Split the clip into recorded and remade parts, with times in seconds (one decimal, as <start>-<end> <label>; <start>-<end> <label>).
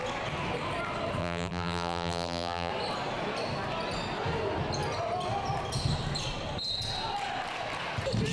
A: 0.0-1.2 recorded; 1.2-2.7 remade; 2.7-8.3 recorded